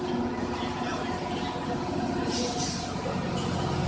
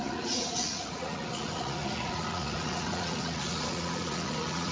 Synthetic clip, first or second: second